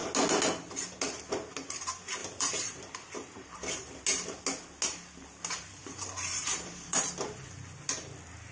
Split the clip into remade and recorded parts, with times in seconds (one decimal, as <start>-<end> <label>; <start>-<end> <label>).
0.0-2.2 recorded; 2.2-4.0 remade; 4.0-5.8 recorded; 5.8-7.0 remade; 7.0-8.5 recorded